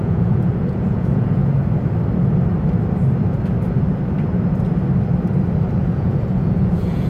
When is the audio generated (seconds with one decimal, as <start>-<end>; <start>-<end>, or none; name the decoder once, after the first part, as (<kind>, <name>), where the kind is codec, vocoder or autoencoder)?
0.0-1.4 (vocoder, Vocos); 5.7-7.1